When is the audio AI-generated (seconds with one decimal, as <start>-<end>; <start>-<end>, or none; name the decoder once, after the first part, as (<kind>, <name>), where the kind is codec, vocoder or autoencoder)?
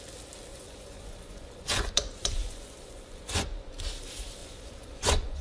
0.5-3.7 (vocoder, Vocos); 4.4-5.4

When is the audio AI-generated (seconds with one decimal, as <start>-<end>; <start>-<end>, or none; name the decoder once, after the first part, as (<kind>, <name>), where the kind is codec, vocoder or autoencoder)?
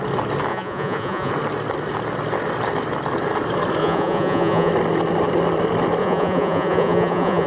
0.5-1.3 (vocoder, Vocos); 3.8-4.7; 6.0-7.5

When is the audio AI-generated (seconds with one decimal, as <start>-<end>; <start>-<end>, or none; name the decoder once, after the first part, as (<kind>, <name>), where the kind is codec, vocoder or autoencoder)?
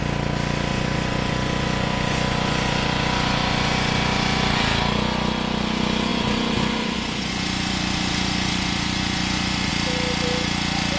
0.7-4.6 (vocoder, Vocos); 6.1-9.7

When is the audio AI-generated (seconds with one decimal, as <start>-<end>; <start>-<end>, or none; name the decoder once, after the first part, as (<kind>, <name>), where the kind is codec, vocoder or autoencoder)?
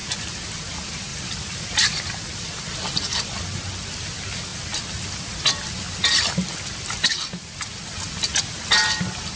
1.1-3.4 (vocoder, BigVGAN v2)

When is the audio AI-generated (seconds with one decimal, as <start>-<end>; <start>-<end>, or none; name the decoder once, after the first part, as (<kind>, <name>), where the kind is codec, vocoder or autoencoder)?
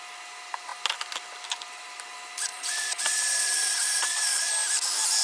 2.5-4.5 (vocoder, Vocos)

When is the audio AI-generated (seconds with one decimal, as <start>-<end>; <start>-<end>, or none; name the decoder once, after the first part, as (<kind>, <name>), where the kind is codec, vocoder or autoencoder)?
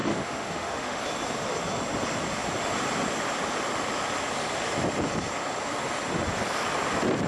0.0-1.0 (autoencoder, DAC-VAE)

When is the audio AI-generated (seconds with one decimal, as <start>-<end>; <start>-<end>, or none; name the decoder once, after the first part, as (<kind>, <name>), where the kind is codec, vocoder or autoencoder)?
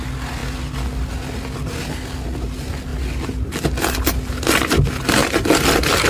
none